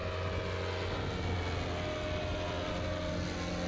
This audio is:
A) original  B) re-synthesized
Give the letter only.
A